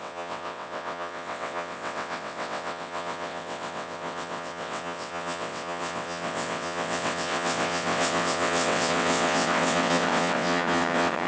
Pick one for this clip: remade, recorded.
remade